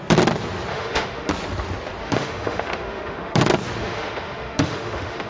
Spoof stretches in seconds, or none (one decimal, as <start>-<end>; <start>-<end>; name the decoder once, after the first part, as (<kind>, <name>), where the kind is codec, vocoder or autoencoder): 0.7-1.3 (autoencoder, DAC-VAE); 2.0-3.4; 3.8-5.3